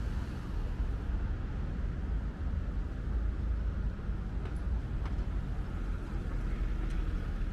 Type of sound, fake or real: real